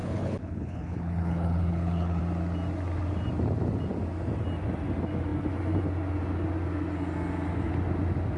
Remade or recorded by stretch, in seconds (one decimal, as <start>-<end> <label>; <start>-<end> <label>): 0.0-2.2 remade; 2.2-8.4 recorded